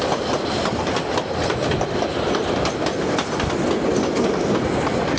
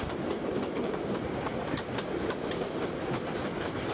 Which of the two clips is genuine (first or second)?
first